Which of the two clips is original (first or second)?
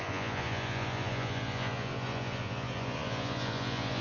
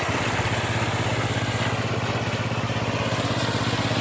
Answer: second